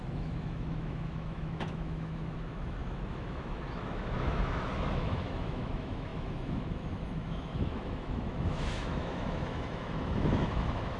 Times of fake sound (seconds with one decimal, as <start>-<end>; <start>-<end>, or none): 0.0-11.0